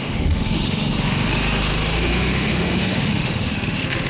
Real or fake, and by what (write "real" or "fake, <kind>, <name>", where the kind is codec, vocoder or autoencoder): fake, autoencoder, DAC-VAE